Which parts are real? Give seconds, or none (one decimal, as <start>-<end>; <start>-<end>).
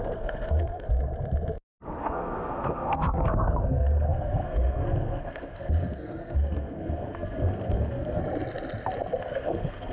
0.9-2.0; 8.2-9.2